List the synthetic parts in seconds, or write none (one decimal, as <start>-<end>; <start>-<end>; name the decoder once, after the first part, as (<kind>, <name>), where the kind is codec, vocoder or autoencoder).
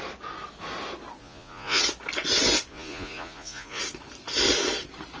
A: 1.2-1.8 (vocoder, Vocos); 2.7-3.8